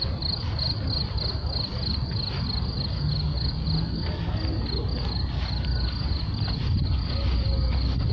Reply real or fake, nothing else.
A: real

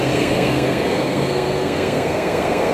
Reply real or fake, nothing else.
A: fake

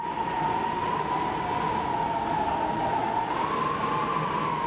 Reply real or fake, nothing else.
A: real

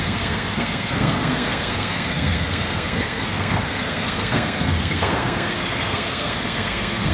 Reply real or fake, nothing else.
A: fake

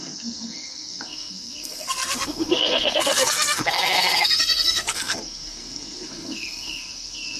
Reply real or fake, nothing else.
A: fake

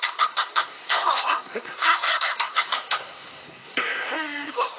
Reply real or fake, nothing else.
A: fake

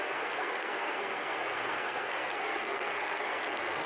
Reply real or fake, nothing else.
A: fake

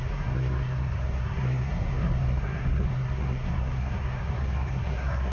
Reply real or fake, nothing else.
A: fake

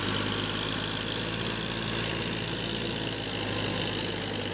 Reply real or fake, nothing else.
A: real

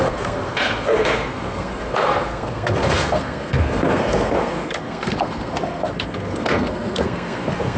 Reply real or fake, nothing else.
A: fake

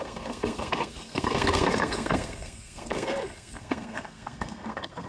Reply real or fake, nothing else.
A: fake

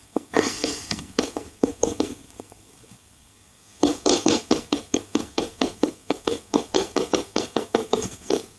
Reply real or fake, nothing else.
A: fake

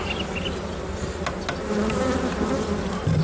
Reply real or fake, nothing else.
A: real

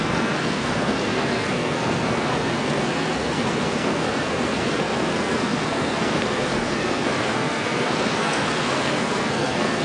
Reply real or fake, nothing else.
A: fake